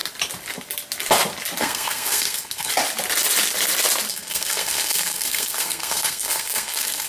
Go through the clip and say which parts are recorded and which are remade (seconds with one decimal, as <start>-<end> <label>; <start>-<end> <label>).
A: 0.0-1.6 recorded; 1.6-2.7 remade; 2.7-4.1 recorded; 4.1-7.1 remade